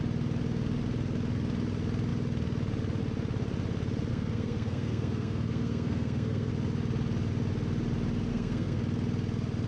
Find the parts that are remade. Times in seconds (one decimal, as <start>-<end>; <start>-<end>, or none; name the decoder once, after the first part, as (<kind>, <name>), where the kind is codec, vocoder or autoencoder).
4.1-6.5 (codec, SNAC); 8.3-8.8